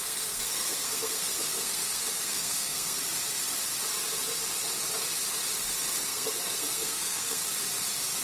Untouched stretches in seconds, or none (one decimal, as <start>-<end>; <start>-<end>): 3.0-6.0; 7.4-8.2